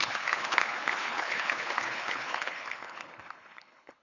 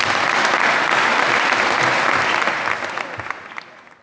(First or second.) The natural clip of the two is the second